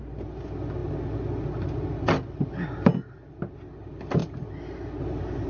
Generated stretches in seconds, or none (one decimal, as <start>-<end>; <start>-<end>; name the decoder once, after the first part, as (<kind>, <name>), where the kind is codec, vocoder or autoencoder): none

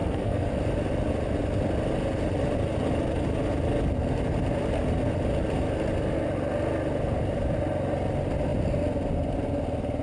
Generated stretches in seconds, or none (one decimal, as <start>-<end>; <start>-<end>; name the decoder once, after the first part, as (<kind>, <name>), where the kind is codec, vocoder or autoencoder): 0.0-0.5 (codec, SNAC)

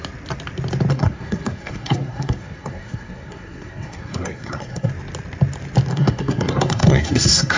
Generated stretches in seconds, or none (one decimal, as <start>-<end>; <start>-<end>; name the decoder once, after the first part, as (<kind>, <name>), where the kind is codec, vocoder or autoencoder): 0.9-4.9 (codec, SNAC); 5.9-7.6